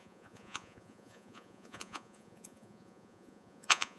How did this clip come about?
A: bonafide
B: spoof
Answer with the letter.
B